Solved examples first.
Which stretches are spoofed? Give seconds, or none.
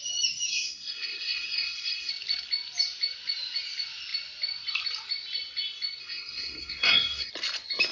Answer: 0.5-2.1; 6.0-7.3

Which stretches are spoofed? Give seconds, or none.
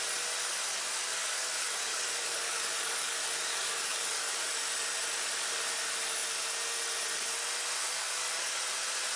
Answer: 0.7-4.4; 7.8-8.6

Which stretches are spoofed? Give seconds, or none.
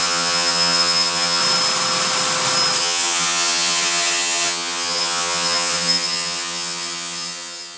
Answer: 0.0-1.4; 2.8-7.8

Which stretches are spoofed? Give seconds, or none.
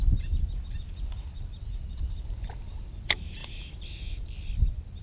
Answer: none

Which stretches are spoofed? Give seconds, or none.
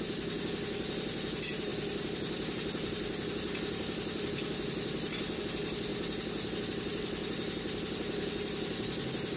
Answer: none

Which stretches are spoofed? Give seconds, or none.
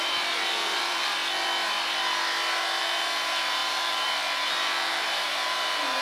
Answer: 0.0-1.2; 2.8-6.0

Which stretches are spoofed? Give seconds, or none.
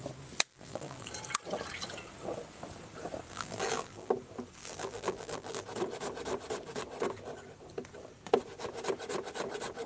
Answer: 0.5-1.1; 3.3-4.1; 4.6-5.6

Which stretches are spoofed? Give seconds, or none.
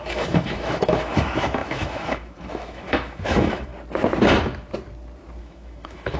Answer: 0.0-3.7; 5.4-6.2